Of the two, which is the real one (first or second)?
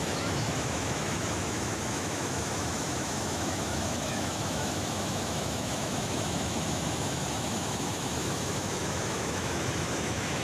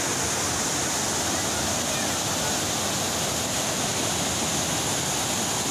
second